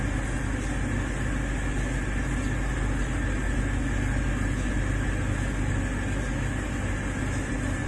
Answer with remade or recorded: recorded